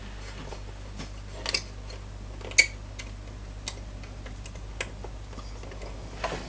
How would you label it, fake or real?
real